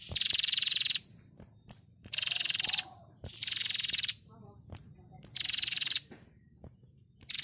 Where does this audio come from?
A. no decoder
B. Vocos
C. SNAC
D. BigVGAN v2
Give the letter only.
D